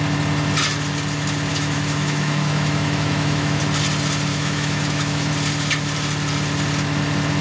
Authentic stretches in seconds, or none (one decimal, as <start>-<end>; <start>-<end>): 0.0-1.5; 3.6-4.3; 5.3-7.4